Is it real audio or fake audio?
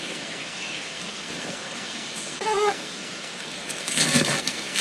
fake